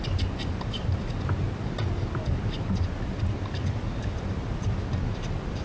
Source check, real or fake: real